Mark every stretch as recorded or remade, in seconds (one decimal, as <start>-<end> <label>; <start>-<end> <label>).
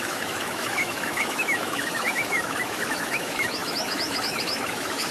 0.0-5.1 remade